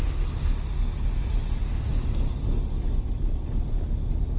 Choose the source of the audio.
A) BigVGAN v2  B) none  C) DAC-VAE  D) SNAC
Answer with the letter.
B